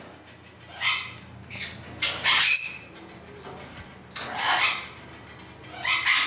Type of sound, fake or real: real